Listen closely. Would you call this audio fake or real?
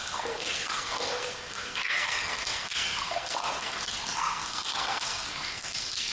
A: fake